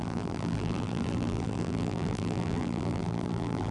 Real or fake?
fake